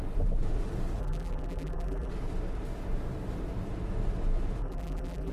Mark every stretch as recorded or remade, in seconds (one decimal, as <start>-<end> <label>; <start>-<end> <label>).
0.0-1.0 recorded; 1.0-2.1 remade; 2.1-4.6 recorded; 4.6-5.3 remade